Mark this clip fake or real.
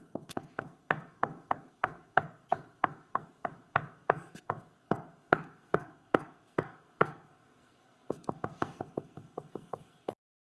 fake